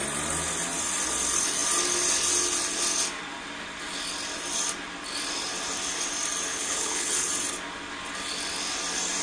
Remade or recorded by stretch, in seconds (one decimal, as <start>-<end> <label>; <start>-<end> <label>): 0.0-6.5 recorded; 6.5-7.3 remade; 7.3-9.2 recorded